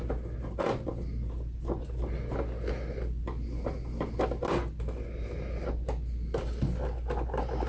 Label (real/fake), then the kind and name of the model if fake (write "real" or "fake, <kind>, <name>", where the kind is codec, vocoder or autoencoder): real